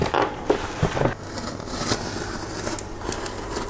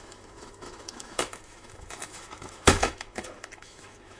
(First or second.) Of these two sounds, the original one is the first